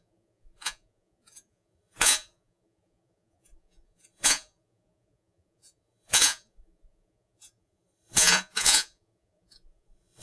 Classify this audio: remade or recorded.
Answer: remade